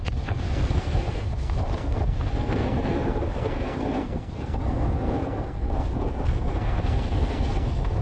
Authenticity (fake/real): fake